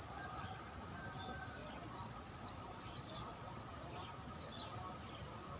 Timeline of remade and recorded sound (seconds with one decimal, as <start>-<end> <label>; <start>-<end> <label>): 0.0-1.6 recorded; 1.6-3.7 remade; 3.7-5.6 recorded